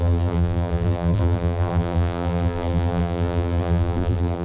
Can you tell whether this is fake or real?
fake